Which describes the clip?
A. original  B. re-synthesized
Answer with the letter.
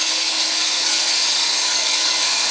B